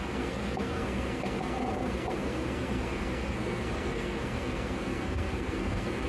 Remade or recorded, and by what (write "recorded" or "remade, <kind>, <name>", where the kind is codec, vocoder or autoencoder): remade, codec, SNAC